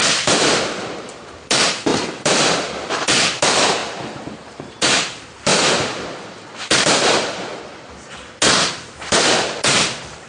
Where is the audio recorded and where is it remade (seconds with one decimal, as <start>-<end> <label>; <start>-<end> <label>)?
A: 0.0-5.5 remade; 5.5-6.8 recorded; 6.8-7.5 remade; 7.5-8.7 recorded; 8.7-10.3 remade